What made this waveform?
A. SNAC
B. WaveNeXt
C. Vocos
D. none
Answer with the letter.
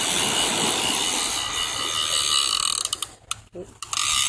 D